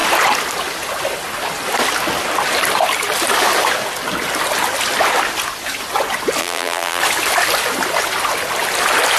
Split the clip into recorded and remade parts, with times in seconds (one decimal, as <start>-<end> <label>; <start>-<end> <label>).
0.0-6.4 recorded; 6.4-7.0 remade; 7.0-9.2 recorded